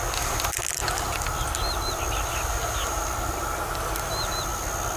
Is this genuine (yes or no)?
yes